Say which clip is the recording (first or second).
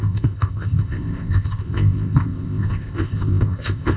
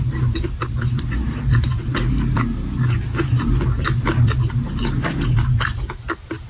second